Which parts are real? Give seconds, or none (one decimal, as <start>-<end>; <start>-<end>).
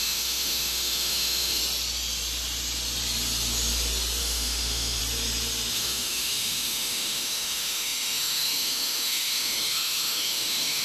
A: 1.6-4.2; 5.0-5.7